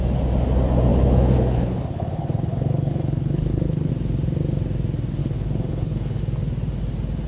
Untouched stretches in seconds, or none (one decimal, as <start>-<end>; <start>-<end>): 0.0-0.9; 3.9-5.2; 6.2-7.3